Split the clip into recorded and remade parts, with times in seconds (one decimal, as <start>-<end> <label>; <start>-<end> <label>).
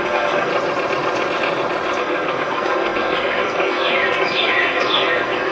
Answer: 0.0-0.5 remade; 0.5-2.0 recorded; 2.0-5.5 remade